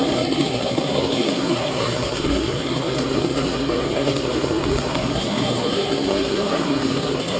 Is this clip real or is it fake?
fake